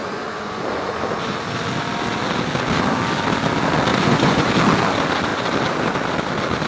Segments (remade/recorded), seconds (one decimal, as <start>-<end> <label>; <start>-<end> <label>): 0.0-1.0 remade; 1.0-3.9 recorded; 3.9-4.5 remade; 4.5-6.7 recorded